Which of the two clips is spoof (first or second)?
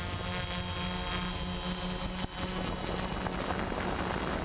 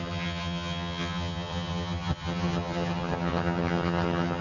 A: second